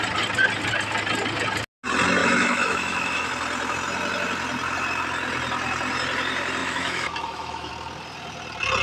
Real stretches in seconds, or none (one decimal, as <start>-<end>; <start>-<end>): 0.0-2.2; 3.3-6.6; 7.7-8.8